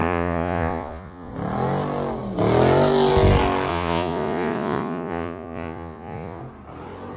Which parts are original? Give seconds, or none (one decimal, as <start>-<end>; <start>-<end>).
1.3-3.7; 6.4-7.2